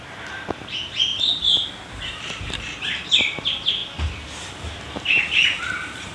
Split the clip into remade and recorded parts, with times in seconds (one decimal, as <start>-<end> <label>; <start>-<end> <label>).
0.0-1.1 remade; 1.1-1.9 recorded; 1.9-3.8 remade; 3.8-4.8 recorded; 4.8-6.1 remade